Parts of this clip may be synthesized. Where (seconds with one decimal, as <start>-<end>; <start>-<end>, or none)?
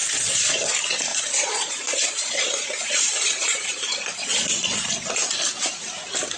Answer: 0.0-0.7; 1.1-4.9